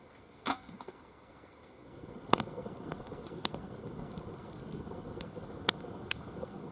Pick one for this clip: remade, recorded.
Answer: remade